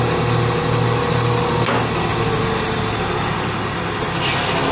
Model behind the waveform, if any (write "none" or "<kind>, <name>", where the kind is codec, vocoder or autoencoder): none